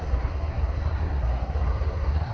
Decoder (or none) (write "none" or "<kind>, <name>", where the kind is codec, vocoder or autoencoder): codec, SNAC